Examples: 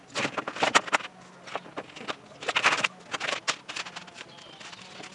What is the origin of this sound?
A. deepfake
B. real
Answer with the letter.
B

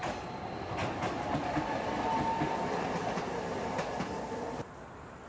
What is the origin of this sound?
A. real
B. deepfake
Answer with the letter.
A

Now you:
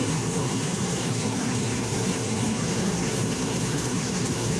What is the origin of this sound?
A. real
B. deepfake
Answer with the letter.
B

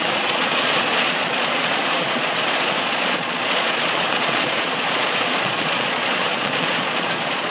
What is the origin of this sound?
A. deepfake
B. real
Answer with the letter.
A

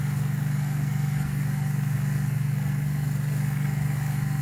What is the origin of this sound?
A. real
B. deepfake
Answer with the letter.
B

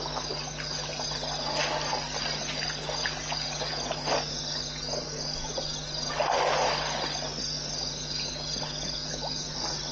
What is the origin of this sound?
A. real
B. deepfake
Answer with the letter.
A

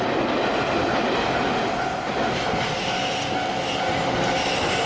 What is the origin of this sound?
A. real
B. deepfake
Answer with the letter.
A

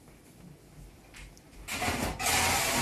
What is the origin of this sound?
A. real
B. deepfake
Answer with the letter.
A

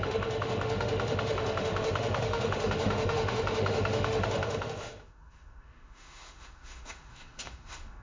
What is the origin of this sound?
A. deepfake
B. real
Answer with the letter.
A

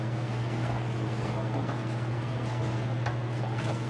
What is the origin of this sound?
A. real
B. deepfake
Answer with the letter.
B